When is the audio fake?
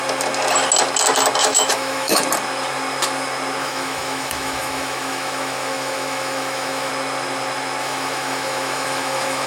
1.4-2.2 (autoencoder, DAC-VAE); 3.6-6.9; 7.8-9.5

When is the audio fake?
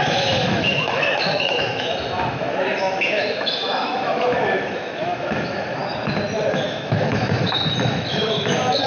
0.0-5.8 (autoencoder, DAC-VAE); 6.5-8.9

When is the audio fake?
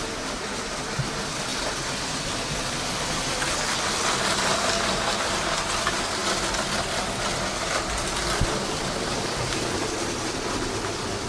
none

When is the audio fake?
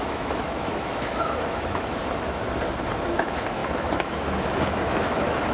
0.0-2.0 (autoencoder, DAC-VAE); 3.0-5.5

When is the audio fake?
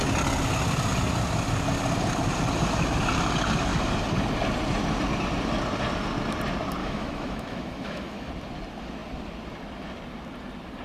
6.8-8.3 (autoencoder, DAC-VAE)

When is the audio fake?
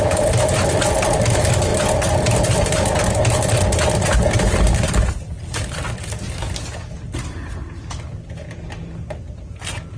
none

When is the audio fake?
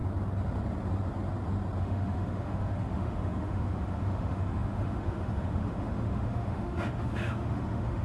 1.8-8.0 (autoencoder, DAC-VAE)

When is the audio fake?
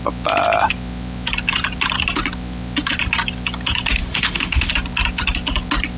4.0-4.7 (autoencoder, DAC-VAE)